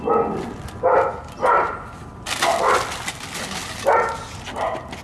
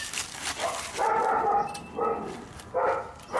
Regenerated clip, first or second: second